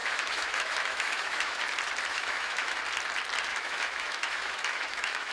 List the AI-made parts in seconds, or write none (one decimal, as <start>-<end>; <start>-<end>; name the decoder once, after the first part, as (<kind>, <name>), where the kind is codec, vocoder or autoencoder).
0.0-1.6 (autoencoder, DAC-VAE); 2.1-2.8; 3.5-5.3